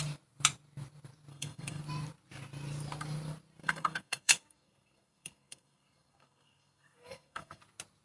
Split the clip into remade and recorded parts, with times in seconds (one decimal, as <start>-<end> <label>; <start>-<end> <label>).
0.0-1.3 recorded; 1.3-1.8 remade; 1.8-3.6 recorded; 3.6-7.6 remade; 7.6-8.0 recorded

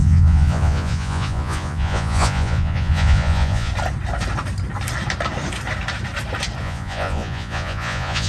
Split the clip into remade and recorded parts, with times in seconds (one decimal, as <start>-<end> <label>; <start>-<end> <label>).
0.0-3.7 remade; 3.7-6.6 recorded; 6.6-8.3 remade

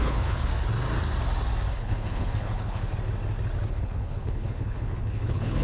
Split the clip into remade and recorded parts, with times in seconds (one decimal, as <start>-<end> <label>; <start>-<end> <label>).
0.0-0.5 remade; 0.5-1.7 recorded; 1.7-2.8 remade; 2.8-3.7 recorded; 3.7-5.6 remade

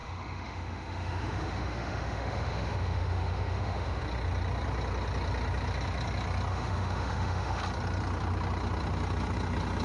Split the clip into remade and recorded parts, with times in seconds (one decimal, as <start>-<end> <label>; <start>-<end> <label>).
0.0-4.0 remade; 4.0-6.5 recorded; 6.5-7.6 remade; 7.6-9.8 recorded

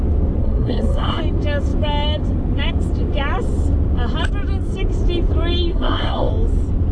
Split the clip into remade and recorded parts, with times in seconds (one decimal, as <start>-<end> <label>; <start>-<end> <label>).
0.0-0.4 recorded; 0.4-1.2 remade; 1.2-5.7 recorded; 5.7-6.3 remade; 6.3-6.9 recorded

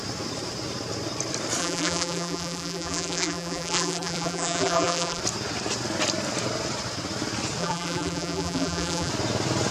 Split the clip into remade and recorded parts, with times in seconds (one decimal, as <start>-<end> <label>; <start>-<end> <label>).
0.0-1.6 recorded; 1.6-5.2 remade; 5.2-7.6 recorded; 7.6-9.1 remade; 9.1-9.7 recorded

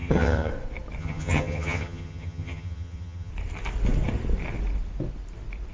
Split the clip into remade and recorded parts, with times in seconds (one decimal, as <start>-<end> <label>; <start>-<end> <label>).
0.0-0.5 remade; 0.5-1.0 recorded; 1.0-3.3 remade; 3.3-5.7 recorded